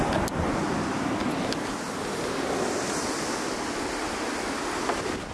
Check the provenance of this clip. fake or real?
real